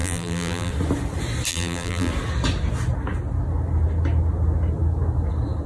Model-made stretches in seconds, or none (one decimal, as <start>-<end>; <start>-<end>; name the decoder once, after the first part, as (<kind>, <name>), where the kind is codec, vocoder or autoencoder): 0.0-0.7 (vocoder, BigVGAN v2); 1.5-2.1